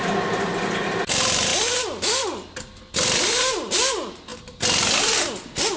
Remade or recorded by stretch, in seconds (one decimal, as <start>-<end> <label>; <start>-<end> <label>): 0.0-5.8 recorded

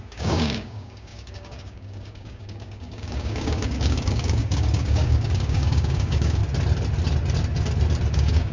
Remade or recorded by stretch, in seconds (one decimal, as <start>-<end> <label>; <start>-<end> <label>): 0.0-6.4 remade; 6.4-8.1 recorded; 8.1-8.5 remade

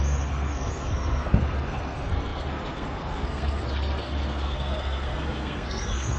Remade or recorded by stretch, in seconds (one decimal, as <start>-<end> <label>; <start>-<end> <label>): 0.0-6.2 remade

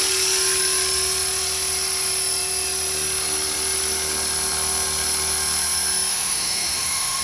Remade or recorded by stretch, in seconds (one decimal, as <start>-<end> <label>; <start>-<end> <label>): 0.0-6.1 recorded; 6.1-7.2 remade

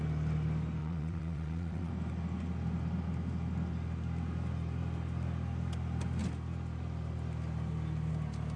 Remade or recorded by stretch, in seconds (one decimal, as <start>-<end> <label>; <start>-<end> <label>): 0.0-0.8 recorded; 0.8-1.9 remade; 1.9-8.6 recorded

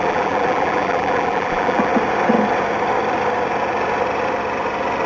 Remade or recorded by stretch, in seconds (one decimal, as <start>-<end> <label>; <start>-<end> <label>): 0.0-1.9 remade; 1.9-5.1 recorded

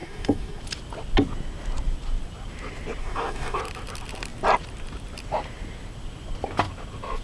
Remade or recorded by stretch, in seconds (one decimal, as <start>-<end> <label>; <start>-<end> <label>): 0.0-0.6 remade; 0.6-3.0 recorded; 3.0-3.6 remade; 3.6-7.2 recorded

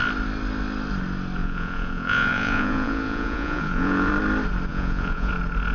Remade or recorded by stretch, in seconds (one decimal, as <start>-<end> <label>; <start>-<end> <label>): 0.0-1.4 recorded; 1.4-4.1 remade; 4.1-4.7 recorded; 4.7-5.3 remade; 5.3-5.7 recorded